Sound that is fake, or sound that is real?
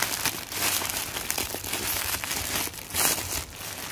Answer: fake